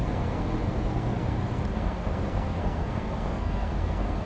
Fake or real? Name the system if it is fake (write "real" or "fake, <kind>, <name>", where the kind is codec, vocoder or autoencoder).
fake, codec, SNAC